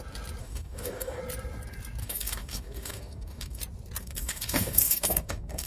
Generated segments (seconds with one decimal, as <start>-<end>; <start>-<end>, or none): 0.4-1.2; 2.0-3.6; 4.0-5.7